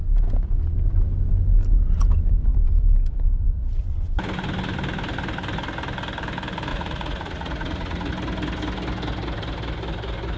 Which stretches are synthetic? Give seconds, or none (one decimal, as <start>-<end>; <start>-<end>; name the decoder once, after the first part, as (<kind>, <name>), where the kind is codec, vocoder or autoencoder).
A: 6.7-8.1 (vocoder, Vocos)